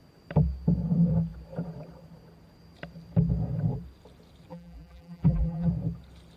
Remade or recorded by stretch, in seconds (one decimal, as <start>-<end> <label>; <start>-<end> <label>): 0.0-4.5 recorded; 4.5-5.7 remade; 5.7-6.4 recorded